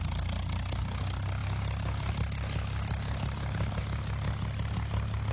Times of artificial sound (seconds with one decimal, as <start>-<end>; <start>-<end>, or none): none